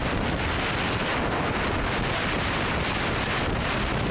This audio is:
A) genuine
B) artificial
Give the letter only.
A